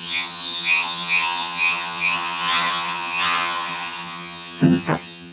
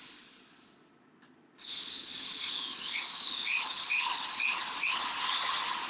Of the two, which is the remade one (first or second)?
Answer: first